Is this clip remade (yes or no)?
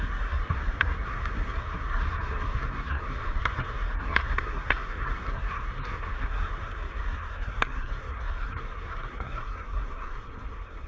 yes